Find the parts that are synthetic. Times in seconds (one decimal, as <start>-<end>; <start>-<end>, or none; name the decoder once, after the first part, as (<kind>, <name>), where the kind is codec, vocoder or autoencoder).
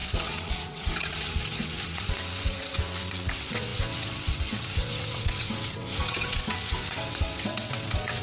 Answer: 0.0-8.2 (vocoder, WaveNeXt)